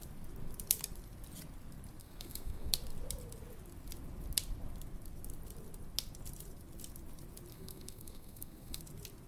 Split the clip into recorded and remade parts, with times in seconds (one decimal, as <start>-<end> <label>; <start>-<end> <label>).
0.0-2.0 recorded; 2.0-2.7 remade; 2.7-7.5 recorded; 7.5-8.8 remade; 8.8-9.3 recorded